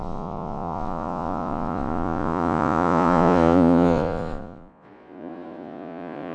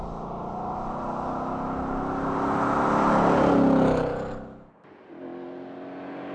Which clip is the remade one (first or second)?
first